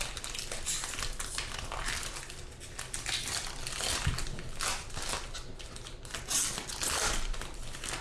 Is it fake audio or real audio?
real